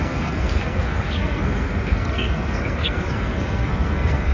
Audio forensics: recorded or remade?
remade